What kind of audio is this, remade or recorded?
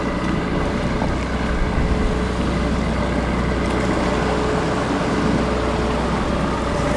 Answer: recorded